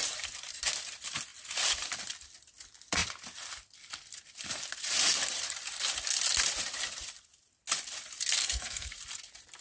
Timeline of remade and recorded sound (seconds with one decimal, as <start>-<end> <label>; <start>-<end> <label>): 0.0-8.4 recorded; 8.4-8.9 remade; 8.9-9.6 recorded